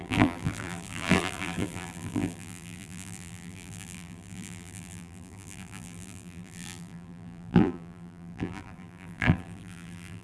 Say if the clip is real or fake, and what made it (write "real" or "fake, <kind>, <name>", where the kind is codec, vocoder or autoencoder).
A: fake, vocoder, BigVGAN v2